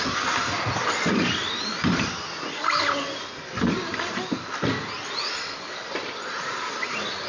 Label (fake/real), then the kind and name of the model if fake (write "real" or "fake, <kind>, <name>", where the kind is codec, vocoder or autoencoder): real